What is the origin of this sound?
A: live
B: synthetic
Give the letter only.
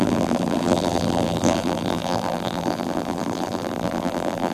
B